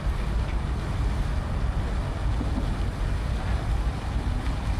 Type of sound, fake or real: real